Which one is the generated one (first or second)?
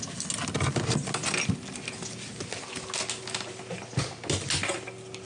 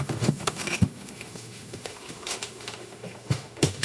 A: second